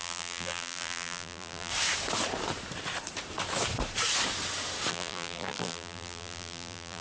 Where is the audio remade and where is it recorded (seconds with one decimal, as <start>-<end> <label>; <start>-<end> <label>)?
0.0-1.7 remade; 1.7-4.9 recorded; 4.9-7.0 remade

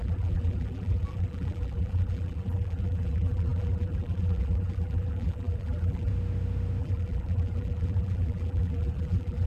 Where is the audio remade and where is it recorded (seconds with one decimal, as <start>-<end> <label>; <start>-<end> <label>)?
0.0-6.1 remade; 6.1-6.8 recorded; 6.8-9.5 remade

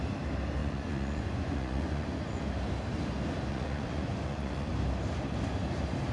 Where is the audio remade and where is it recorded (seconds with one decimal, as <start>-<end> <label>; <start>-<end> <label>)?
0.0-0.6 recorded; 0.6-2.4 remade; 2.4-3.5 recorded; 3.5-4.7 remade; 4.7-6.1 recorded

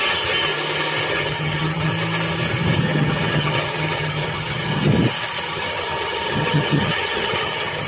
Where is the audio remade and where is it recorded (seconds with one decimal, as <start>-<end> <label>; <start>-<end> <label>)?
0.0-0.5 remade; 0.5-1.1 recorded; 1.1-1.9 remade; 1.9-2.8 recorded; 2.8-4.9 remade; 4.9-5.5 recorded; 5.5-7.9 remade

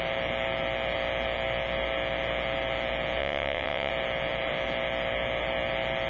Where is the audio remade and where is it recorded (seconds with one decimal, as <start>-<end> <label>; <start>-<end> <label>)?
0.0-3.2 recorded; 3.2-3.9 remade; 3.9-6.1 recorded

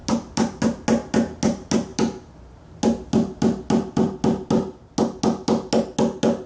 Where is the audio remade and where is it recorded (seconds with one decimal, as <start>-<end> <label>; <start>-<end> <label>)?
0.0-6.5 recorded

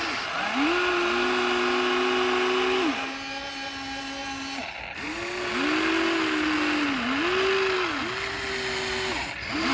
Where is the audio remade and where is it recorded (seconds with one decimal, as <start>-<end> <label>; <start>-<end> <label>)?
0.0-9.7 recorded